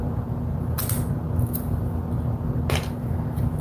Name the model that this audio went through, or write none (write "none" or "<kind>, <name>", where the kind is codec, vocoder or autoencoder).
none